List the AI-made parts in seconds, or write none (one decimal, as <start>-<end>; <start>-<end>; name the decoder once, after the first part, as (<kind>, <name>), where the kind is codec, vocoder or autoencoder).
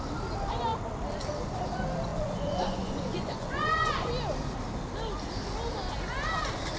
2.1-4.1 (vocoder, Vocos)